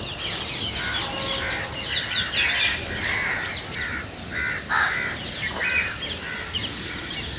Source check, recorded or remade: recorded